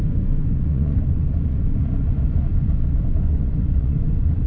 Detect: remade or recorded remade